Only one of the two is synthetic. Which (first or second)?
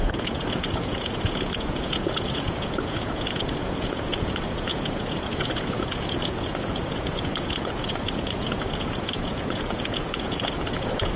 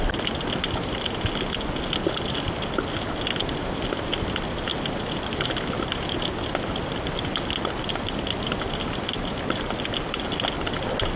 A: first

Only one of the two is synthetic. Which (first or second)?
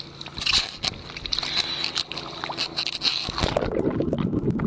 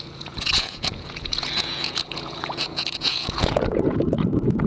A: second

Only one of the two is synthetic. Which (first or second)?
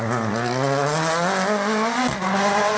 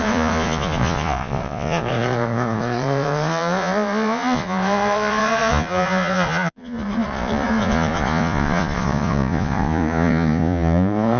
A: second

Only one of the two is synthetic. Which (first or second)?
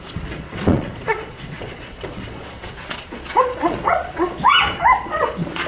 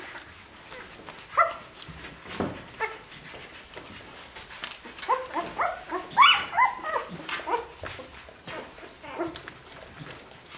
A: first